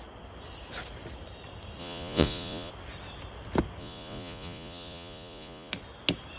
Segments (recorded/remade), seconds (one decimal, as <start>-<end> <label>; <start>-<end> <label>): 0.0-1.8 recorded; 1.8-2.7 remade; 2.7-3.8 recorded; 3.8-5.7 remade; 5.7-6.4 recorded